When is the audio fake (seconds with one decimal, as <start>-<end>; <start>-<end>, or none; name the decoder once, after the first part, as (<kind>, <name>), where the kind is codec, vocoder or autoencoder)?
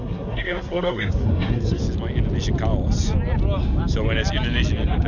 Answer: 0.0-1.8 (codec, SNAC)